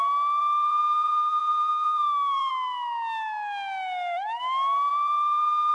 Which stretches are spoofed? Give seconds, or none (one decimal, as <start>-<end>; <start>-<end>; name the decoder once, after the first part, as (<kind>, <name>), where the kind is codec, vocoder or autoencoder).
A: 0.4-2.5 (vocoder, BigVGAN v2); 4.9-5.7